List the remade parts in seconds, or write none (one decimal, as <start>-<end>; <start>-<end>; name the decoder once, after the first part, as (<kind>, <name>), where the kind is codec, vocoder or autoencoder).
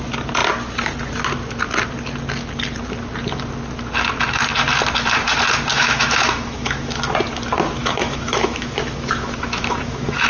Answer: 5.7-7.0 (autoencoder, DAC-VAE); 7.8-10.3